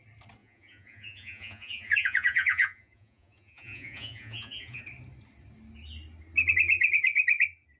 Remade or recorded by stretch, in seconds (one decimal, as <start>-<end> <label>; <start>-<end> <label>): 0.0-0.4 recorded; 0.4-4.8 remade; 4.8-7.8 recorded